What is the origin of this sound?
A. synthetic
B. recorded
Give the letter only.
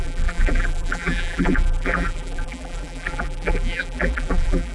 A